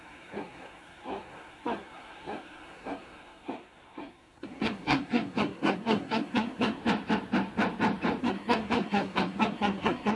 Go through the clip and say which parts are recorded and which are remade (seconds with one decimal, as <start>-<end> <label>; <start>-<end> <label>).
0.0-6.8 remade; 6.8-8.2 recorded; 8.2-10.2 remade